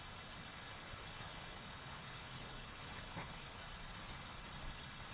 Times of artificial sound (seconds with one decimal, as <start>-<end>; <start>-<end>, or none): 0.5-3.6